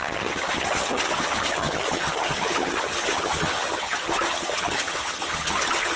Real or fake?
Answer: fake